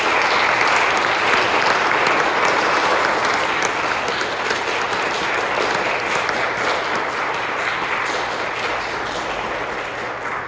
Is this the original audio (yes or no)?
yes